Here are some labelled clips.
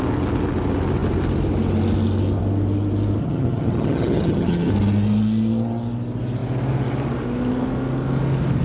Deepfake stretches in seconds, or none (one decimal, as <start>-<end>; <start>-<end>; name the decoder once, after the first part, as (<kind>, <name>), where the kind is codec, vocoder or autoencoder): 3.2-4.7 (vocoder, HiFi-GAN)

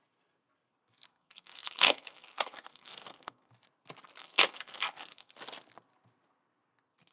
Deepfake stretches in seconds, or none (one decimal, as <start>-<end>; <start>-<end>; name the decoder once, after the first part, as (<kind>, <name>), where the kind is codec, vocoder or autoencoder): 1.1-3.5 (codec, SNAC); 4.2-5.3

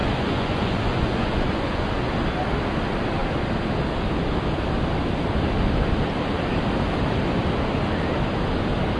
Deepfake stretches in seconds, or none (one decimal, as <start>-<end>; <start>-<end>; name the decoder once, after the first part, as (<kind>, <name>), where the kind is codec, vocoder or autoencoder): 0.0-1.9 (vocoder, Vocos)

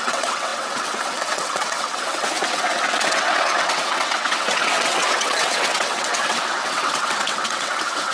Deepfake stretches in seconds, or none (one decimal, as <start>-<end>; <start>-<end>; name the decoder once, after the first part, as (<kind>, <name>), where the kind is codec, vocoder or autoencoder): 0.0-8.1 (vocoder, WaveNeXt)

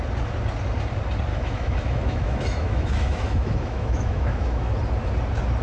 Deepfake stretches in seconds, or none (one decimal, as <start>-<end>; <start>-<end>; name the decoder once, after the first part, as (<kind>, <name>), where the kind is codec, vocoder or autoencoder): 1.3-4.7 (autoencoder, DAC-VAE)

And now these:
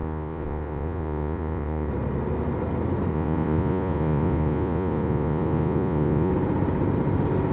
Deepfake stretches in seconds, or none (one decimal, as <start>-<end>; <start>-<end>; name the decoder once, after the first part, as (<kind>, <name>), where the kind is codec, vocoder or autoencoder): 0.0-1.9 (vocoder, Vocos); 3.1-6.3